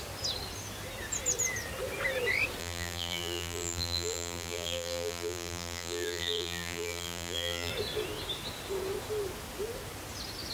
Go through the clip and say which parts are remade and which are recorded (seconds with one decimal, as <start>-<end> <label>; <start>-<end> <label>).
0.0-2.6 recorded; 2.6-7.7 remade; 7.7-10.5 recorded